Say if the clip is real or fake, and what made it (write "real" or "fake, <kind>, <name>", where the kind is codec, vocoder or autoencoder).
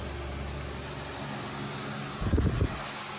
real